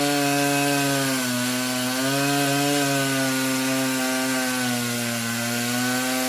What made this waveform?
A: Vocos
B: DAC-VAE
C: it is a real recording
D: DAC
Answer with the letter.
C